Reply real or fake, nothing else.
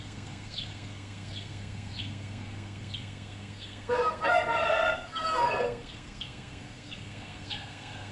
fake